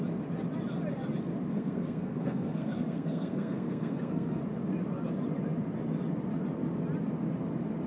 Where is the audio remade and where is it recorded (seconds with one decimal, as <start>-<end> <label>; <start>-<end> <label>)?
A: 0.0-1.5 recorded; 1.5-4.4 remade; 4.4-7.9 recorded